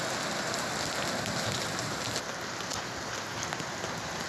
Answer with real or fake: real